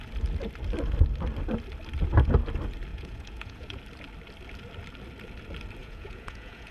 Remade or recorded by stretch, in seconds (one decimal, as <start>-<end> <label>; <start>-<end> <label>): 0.0-2.9 recorded; 2.9-3.8 remade; 3.8-5.8 recorded; 5.8-6.7 remade